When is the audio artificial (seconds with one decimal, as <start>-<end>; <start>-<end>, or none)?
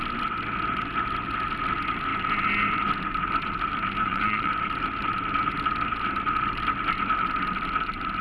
4.0-4.5